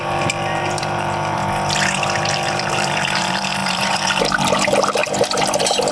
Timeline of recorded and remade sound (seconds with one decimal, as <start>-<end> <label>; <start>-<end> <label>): 0.0-1.4 remade; 1.4-2.2 recorded; 2.2-5.0 remade; 5.0-5.9 recorded